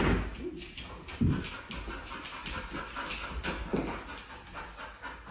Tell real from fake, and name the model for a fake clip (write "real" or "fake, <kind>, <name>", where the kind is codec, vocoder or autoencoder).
real